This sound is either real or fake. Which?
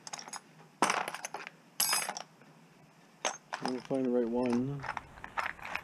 real